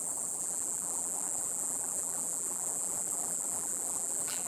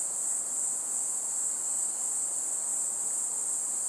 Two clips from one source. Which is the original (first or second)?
second